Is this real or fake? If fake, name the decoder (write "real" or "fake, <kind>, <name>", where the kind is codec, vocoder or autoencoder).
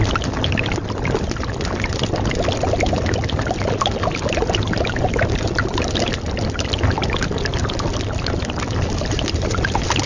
real